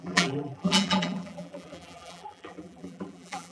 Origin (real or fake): fake